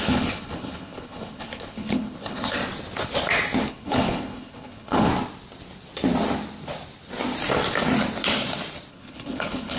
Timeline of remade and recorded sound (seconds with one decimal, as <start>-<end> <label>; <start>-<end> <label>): 0.0-2.6 remade; 2.6-3.7 recorded; 3.7-5.1 remade; 5.1-8.9 recorded; 8.9-9.8 remade